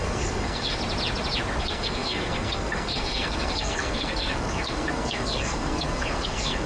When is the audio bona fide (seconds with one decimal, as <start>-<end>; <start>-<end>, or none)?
0.8-1.6